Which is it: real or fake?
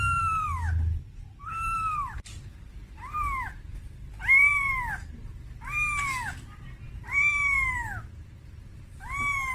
real